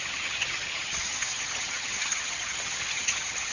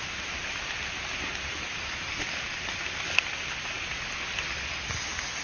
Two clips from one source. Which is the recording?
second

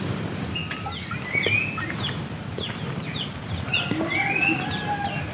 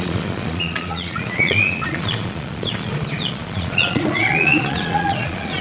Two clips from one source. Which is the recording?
first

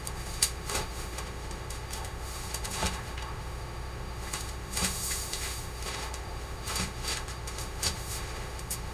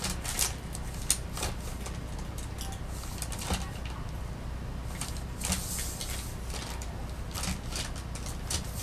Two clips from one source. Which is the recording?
second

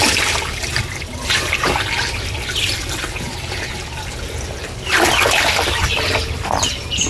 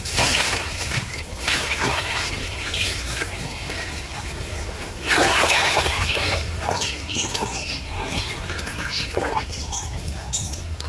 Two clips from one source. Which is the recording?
first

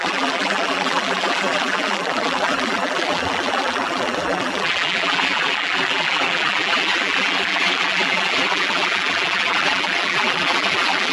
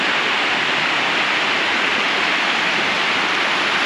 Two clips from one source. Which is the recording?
second